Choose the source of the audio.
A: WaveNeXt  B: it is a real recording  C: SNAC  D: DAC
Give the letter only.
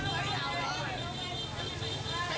B